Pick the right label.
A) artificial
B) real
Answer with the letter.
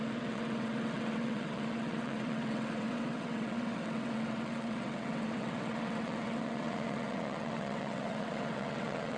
A